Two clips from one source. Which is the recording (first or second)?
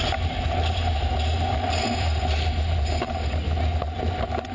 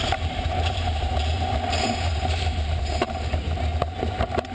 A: first